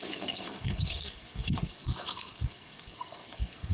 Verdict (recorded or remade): remade